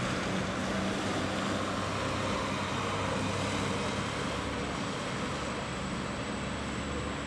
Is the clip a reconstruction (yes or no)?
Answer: no